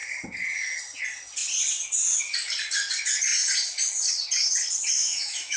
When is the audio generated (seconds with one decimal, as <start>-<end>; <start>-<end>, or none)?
5.0-5.6